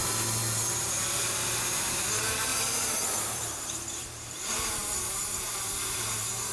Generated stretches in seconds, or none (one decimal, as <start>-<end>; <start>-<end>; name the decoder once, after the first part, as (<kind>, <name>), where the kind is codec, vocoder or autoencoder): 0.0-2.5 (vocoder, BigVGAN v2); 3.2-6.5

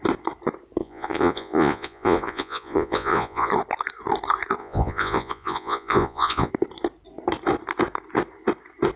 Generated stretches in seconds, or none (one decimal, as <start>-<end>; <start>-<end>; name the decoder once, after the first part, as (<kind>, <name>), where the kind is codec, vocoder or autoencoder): 0.8-3.5 (vocoder, Vocos); 4.6-6.5

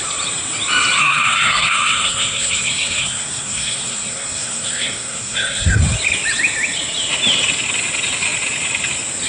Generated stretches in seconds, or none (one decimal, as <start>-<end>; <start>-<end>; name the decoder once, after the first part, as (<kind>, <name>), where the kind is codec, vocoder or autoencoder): 1.0-5.8 (codec, SNAC)

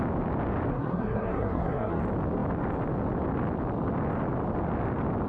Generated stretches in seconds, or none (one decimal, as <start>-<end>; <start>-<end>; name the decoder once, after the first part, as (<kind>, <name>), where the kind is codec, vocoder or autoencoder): 0.7-2.0 (codec, SNAC)

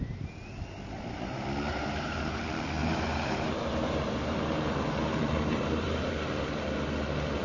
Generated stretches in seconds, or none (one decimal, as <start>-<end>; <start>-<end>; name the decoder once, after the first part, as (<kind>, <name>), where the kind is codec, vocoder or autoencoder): 1.7-2.4 (vocoder, BigVGAN v2); 2.8-6.1

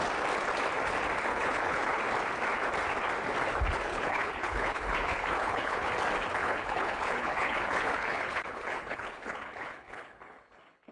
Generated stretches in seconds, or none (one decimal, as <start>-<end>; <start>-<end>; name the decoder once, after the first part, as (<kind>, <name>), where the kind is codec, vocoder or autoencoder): 1.3-2.0 (codec, HILCodec); 3.9-5.9; 6.4-10.9

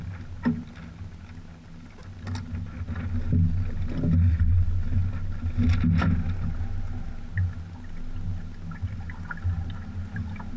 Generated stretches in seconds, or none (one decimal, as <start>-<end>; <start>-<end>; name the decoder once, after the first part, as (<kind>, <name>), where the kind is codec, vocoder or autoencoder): none

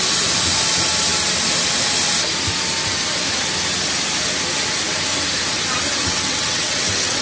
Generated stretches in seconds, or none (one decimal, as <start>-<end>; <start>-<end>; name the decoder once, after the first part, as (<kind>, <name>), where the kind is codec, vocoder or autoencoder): 5.9-7.2 (vocoder, WaveNeXt)